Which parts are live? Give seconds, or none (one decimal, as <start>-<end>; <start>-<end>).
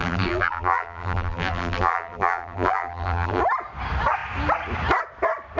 3.4-5.6